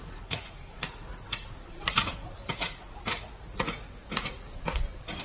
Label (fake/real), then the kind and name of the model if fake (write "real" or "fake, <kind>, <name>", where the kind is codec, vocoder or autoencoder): fake, vocoder, Vocos